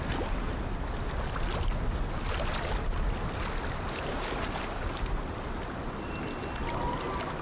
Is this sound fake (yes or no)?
no